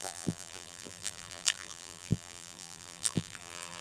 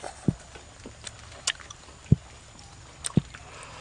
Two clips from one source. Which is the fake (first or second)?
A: first